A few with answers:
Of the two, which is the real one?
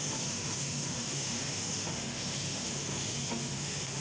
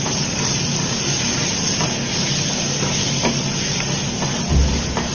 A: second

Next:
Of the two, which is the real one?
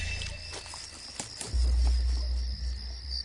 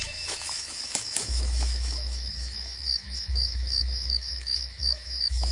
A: first